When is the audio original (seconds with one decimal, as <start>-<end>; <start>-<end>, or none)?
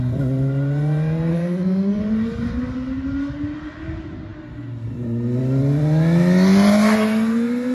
0.0-1.3; 2.0-7.7